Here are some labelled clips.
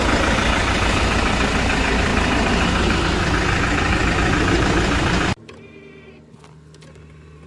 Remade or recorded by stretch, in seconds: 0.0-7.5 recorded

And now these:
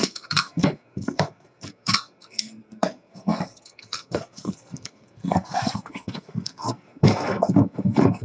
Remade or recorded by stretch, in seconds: 0.0-8.2 remade

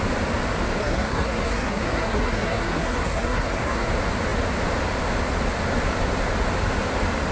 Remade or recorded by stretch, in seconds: 0.0-0.8 recorded; 0.8-3.9 remade; 3.9-7.3 recorded

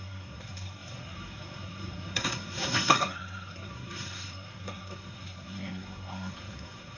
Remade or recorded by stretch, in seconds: 0.0-7.0 remade

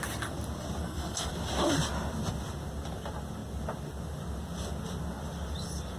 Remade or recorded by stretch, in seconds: 0.0-0.8 recorded; 0.8-1.3 remade; 1.3-6.0 recorded

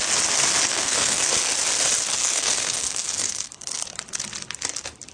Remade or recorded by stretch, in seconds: 0.0-0.7 recorded; 0.7-1.3 remade; 1.3-2.2 recorded; 2.2-3.8 remade; 3.8-5.1 recorded

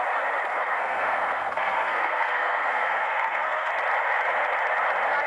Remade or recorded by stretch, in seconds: 0.0-0.5 recorded; 0.5-3.7 remade; 3.7-5.3 recorded

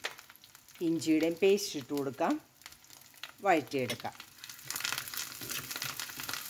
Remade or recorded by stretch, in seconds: 0.0-6.5 recorded